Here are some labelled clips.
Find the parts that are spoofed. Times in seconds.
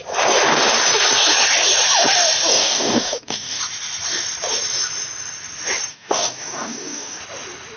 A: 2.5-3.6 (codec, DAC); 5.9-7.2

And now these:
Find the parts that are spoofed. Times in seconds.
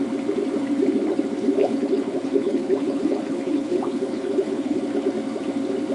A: 1.6-4.8 (codec, HILCodec)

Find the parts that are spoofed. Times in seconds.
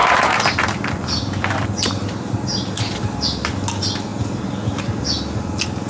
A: 0.0-3.5 (vocoder, BigVGAN v2)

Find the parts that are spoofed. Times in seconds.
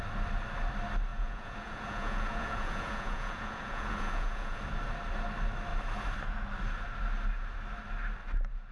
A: 1.1-4.6 (vocoder, Vocos)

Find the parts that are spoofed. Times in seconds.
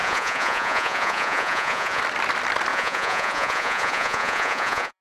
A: 0.0-2.0 (vocoder, Vocos); 2.7-5.0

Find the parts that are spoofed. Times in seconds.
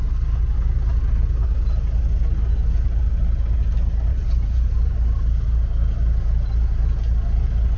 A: 4.1-4.9 (vocoder, BigVGAN v2)